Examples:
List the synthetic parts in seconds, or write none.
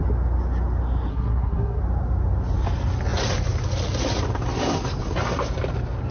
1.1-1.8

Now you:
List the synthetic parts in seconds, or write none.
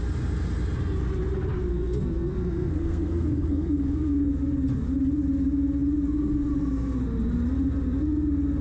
1.7-4.3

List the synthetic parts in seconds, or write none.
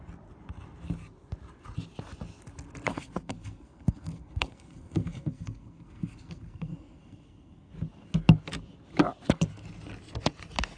2.9-7.7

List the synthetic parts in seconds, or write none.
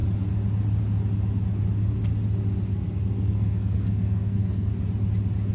2.7-4.7